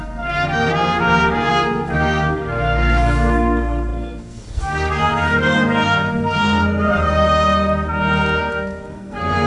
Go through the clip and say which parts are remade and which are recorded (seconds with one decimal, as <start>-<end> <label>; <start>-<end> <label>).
0.0-0.7 remade; 0.7-1.5 recorded; 1.5-6.9 remade; 6.9-8.4 recorded; 8.4-9.5 remade

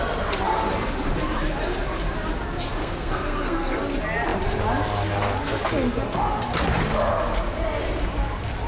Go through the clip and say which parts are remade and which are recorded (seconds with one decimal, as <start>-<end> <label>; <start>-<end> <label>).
0.0-2.8 recorded; 2.8-3.8 remade; 3.8-8.7 recorded